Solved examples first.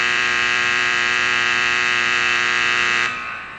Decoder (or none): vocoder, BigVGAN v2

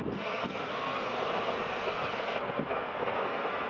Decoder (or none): codec, SNAC